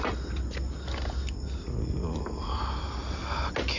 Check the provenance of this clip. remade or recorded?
recorded